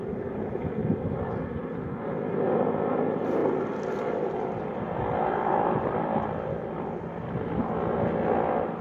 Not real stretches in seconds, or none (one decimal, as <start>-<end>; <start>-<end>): 3.4-7.6